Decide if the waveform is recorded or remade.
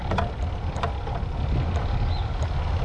recorded